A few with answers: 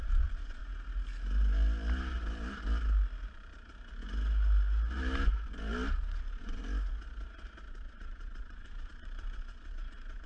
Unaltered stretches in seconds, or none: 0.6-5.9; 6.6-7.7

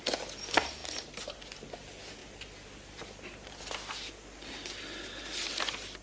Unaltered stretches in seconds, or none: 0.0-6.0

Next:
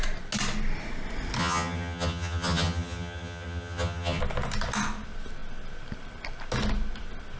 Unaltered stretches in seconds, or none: 0.0-1.4; 4.2-7.4